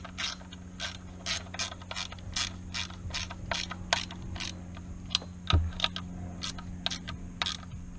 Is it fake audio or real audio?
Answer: real